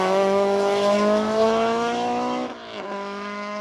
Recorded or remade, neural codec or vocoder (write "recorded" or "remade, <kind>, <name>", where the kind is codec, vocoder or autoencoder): remade, autoencoder, DAC-VAE